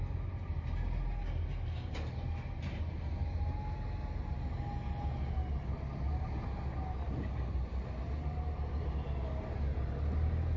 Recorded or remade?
recorded